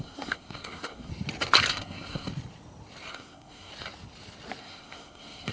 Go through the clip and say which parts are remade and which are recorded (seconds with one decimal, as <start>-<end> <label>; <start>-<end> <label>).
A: 0.0-1.1 remade; 1.1-1.7 recorded; 1.7-2.3 remade; 2.3-3.1 recorded; 3.1-3.7 remade; 3.7-4.6 recorded; 4.6-5.5 remade